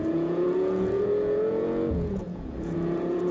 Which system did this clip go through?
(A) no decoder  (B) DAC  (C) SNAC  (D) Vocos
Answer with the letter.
D